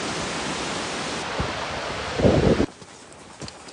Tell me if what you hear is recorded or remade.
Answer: recorded